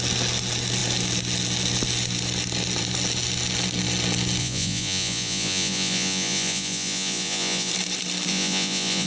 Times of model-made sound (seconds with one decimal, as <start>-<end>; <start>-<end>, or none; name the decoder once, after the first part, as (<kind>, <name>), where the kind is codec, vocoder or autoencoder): 4.4-7.7 (vocoder, Vocos); 8.3-9.1